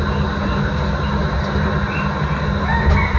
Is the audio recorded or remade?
recorded